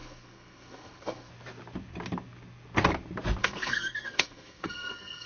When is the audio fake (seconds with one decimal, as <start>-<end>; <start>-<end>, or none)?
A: 0.0-1.3; 3.4-5.3